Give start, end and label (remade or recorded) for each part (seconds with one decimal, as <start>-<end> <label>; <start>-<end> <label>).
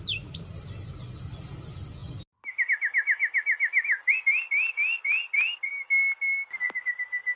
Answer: 0.0-7.4 recorded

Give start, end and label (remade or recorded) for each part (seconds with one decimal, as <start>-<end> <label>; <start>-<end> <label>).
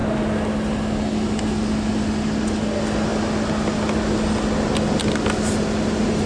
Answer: 0.0-6.3 recorded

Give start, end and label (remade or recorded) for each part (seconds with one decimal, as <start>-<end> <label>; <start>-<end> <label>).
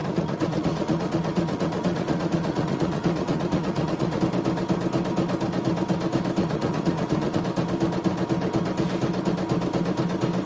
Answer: 0.0-4.2 remade; 4.2-6.4 recorded; 6.4-7.4 remade; 7.4-10.5 recorded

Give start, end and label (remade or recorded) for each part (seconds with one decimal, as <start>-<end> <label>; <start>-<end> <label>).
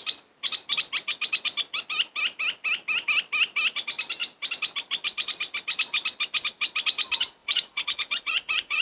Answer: 0.0-7.4 recorded; 7.4-8.8 remade